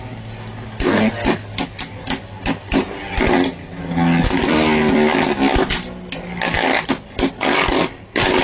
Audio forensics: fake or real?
real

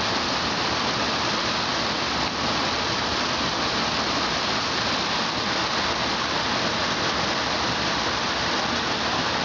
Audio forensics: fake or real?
real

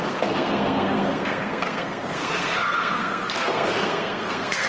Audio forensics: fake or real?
fake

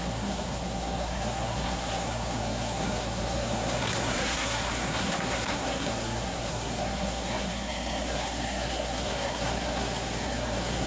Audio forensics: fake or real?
fake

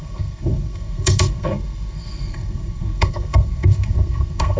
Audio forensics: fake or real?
fake